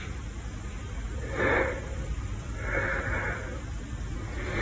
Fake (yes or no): no